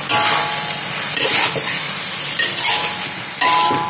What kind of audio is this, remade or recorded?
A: recorded